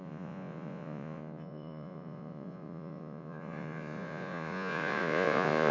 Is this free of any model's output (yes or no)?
no